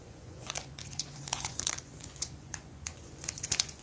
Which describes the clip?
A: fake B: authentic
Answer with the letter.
A